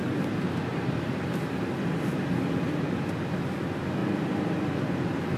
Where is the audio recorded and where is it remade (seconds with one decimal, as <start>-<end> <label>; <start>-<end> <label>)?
0.0-0.7 recorded; 0.7-1.6 remade; 1.6-4.0 recorded; 4.0-5.4 remade